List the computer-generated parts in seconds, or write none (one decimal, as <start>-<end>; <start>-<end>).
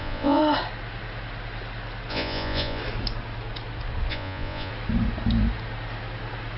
0.0-0.4; 2.1-2.8; 4.1-4.7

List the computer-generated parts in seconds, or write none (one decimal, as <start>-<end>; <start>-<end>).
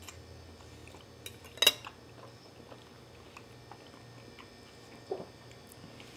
none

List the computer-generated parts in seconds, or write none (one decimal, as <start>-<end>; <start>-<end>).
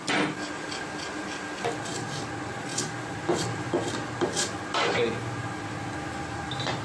none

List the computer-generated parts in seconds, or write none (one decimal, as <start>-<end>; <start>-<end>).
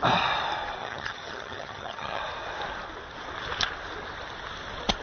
0.8-2.2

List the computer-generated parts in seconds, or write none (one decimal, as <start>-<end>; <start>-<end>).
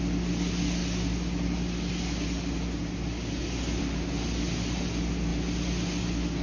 none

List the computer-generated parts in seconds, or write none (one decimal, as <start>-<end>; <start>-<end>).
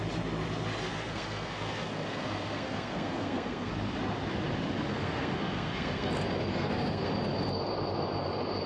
0.9-3.7; 4.9-6.1; 6.5-7.1